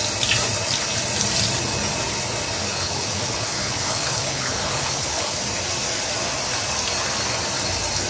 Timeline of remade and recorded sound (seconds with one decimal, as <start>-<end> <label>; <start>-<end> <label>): 0.0-2.6 recorded; 2.6-5.4 remade; 5.4-8.1 recorded

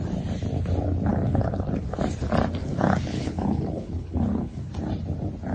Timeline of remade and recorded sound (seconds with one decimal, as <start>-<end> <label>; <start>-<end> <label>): 0.0-1.1 recorded; 1.1-2.0 remade; 2.0-2.6 recorded; 2.6-4.7 remade; 4.7-5.5 recorded

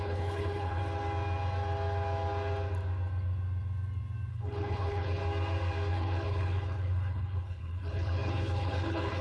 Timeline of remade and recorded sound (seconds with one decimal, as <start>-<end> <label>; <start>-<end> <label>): 0.0-0.8 remade; 0.8-4.3 recorded; 4.3-5.2 remade; 5.2-5.9 recorded; 5.9-9.2 remade